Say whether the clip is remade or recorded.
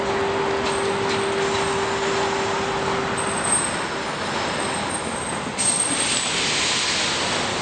recorded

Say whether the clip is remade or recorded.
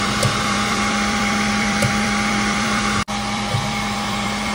remade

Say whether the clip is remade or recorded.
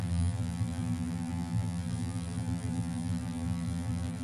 remade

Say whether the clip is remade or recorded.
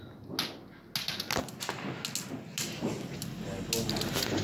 recorded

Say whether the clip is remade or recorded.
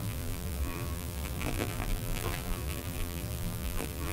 remade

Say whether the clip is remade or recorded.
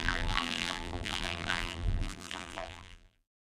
remade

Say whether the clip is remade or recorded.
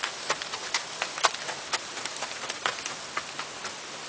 recorded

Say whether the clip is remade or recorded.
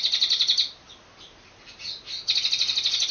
recorded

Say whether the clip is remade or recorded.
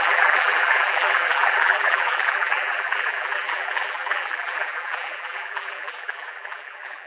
remade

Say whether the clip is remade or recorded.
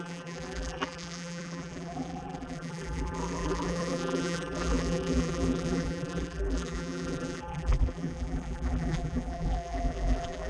remade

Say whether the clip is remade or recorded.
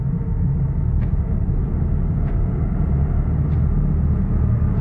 recorded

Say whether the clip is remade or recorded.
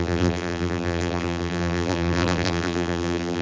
remade